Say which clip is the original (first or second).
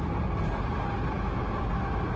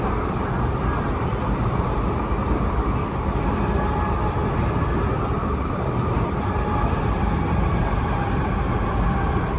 first